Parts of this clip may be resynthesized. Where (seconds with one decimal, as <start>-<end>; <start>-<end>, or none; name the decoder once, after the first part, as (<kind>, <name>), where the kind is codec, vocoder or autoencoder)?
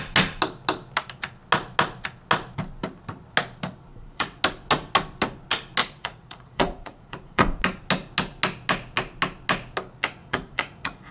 3.9-4.4 (vocoder, Vocos); 5.8-7.6; 10.2-11.1